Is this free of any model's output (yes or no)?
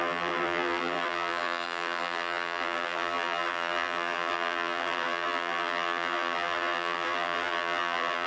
no